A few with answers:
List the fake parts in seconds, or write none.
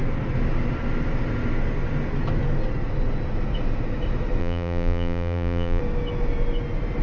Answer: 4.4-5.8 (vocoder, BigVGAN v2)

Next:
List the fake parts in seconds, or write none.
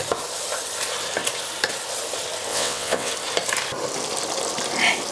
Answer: 2.5-3.1 (vocoder, WaveNeXt)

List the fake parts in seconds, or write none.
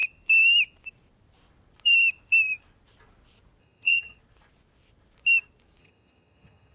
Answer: 3.6-4.2 (vocoder, HiFi-GAN); 5.8-6.7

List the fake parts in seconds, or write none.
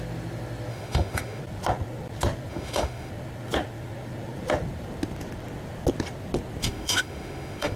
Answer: 0.7-1.4 (autoencoder, DAC-VAE); 2.5-3.1; 6.6-7.8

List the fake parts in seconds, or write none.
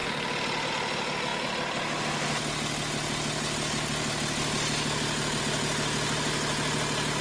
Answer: none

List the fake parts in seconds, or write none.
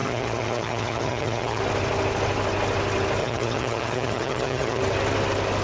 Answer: 0.0-1.6 (vocoder, HiFi-GAN); 3.2-4.8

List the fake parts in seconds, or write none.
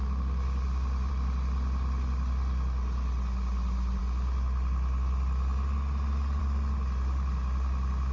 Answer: none